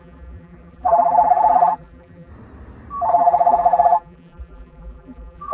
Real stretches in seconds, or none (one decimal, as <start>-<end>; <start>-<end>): 2.3-3.1